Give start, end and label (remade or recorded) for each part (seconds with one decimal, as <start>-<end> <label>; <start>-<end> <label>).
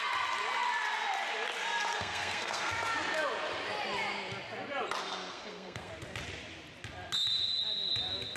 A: 0.0-1.9 recorded; 1.9-2.7 remade; 2.7-5.0 recorded; 5.0-5.9 remade; 5.9-8.4 recorded